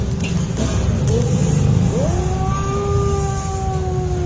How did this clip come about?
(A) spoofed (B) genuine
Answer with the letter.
B